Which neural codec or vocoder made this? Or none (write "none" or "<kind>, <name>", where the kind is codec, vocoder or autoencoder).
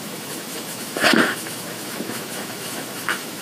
autoencoder, DAC-VAE